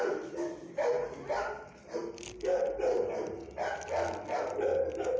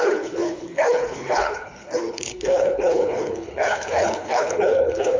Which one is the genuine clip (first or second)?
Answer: first